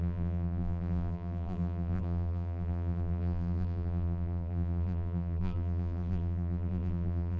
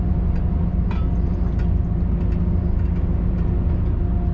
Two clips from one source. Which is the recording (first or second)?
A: second